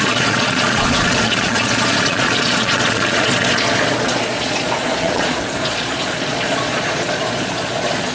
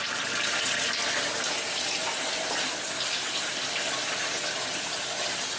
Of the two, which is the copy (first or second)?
first